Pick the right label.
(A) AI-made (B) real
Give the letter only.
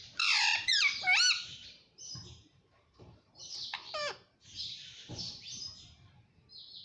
A